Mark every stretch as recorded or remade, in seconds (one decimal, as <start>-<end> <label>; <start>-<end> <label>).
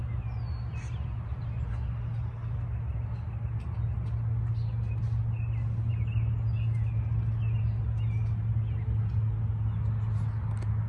0.0-10.9 recorded